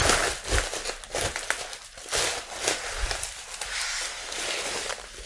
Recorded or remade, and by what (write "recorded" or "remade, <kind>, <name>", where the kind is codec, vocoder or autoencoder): recorded